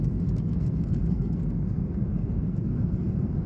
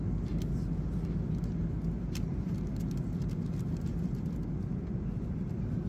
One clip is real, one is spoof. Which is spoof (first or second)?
first